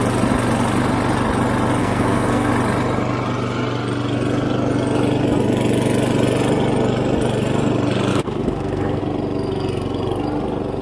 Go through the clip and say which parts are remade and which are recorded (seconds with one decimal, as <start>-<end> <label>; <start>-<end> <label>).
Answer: 0.0-1.8 recorded; 1.8-2.5 remade; 2.5-8.1 recorded; 8.1-9.0 remade; 9.0-10.8 recorded